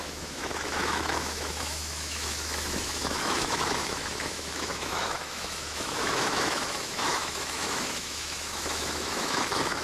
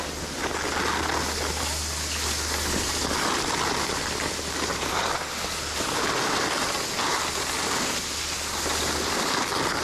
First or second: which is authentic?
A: second